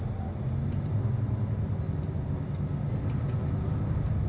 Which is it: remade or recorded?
recorded